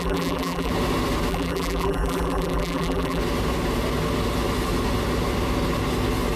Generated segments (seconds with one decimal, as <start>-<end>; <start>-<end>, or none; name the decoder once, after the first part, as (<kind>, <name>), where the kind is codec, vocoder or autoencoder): 0.0-0.7 (vocoder, BigVGAN v2); 1.3-3.2